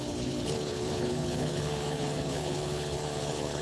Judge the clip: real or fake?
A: fake